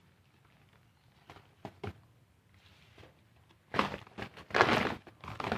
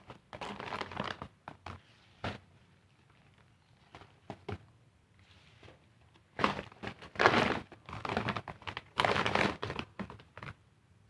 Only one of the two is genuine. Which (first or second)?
first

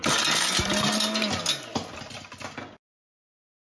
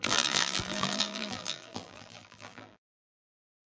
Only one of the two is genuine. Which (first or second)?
first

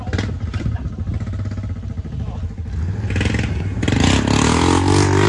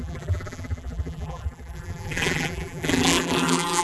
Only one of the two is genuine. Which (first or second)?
first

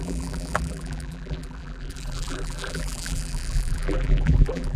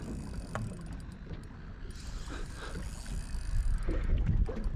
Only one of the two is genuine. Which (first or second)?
second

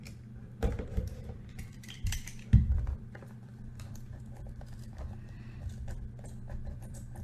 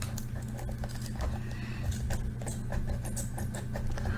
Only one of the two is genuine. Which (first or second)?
second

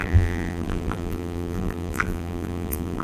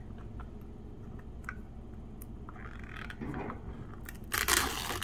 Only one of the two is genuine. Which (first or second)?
second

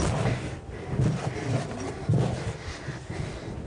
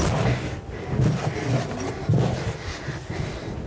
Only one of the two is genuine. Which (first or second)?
second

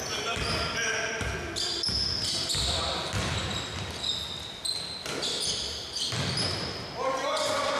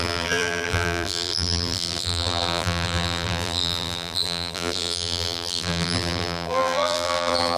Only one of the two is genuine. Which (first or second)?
first